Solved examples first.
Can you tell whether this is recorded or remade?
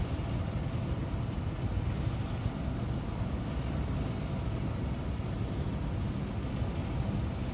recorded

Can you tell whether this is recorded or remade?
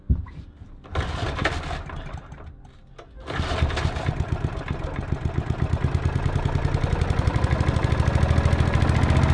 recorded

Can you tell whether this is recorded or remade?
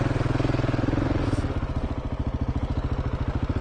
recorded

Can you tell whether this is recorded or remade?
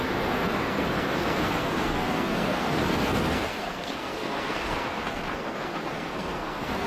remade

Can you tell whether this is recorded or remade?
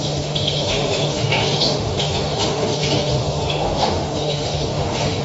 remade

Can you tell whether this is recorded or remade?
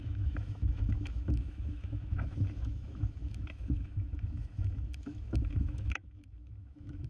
remade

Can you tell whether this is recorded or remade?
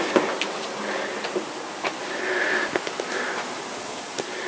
recorded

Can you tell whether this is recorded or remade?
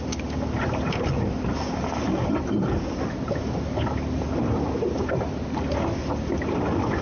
recorded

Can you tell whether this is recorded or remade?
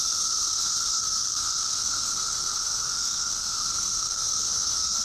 remade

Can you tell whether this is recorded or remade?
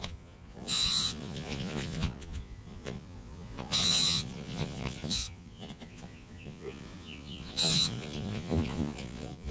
remade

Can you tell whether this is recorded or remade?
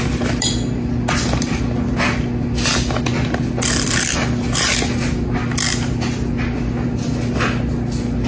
recorded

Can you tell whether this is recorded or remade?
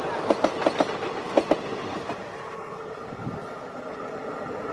recorded